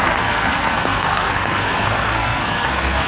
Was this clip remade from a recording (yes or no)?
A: yes